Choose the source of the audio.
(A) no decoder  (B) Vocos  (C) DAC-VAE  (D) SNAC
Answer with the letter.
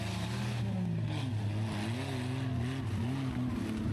A